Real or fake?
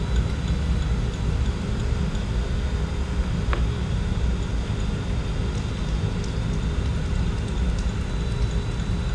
real